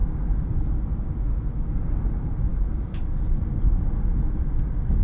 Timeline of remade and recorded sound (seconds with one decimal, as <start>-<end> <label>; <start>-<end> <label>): 0.0-5.0 recorded